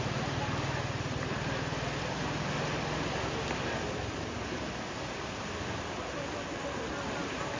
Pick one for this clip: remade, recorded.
recorded